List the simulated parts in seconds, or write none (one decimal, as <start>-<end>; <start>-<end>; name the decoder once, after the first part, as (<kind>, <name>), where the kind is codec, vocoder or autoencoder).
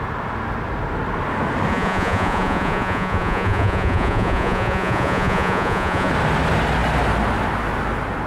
1.7-6.1 (vocoder, Vocos)